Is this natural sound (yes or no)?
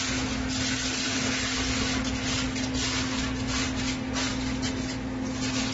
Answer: yes